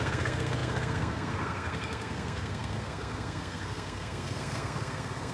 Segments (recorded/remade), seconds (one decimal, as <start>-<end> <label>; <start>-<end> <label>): 0.0-5.3 remade